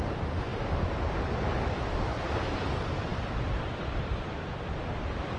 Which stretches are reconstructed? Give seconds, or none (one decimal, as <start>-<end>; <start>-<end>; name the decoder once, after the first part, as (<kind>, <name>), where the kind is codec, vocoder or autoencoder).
none